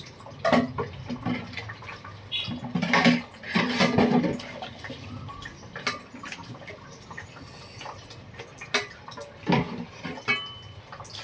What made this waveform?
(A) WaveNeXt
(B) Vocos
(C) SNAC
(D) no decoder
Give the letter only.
D